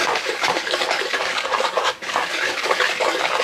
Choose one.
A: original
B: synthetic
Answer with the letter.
B